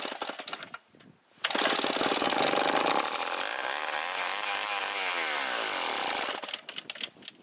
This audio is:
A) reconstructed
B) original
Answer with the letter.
B